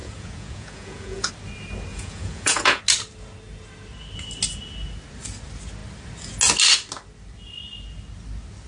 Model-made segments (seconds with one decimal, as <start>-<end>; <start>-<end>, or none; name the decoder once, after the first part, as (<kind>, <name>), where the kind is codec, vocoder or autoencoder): 0.0-1.3 (vocoder, Vocos); 1.9-2.8